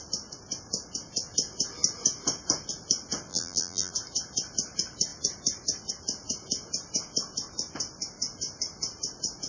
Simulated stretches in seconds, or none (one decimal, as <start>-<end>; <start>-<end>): 3.3-3.9